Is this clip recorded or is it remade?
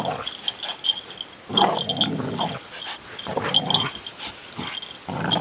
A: recorded